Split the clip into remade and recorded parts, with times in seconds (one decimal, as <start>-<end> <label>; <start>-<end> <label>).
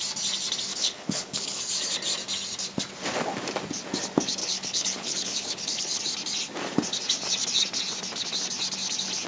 0.0-0.7 recorded; 0.7-1.6 remade; 1.6-4.4 recorded; 4.4-6.0 remade; 6.0-9.3 recorded